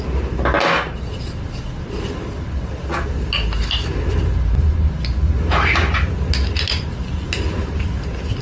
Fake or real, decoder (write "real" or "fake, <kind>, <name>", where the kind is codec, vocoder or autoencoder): real